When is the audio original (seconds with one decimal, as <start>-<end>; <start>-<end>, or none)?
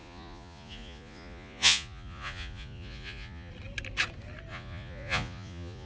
3.5-4.5